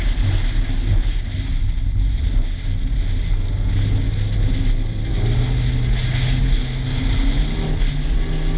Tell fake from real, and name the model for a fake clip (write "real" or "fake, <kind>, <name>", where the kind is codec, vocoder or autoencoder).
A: real